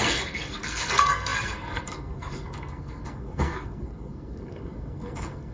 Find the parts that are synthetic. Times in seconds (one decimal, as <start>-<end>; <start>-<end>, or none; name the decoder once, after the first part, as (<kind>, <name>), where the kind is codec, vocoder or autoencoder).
0.0-5.5 (codec, SNAC)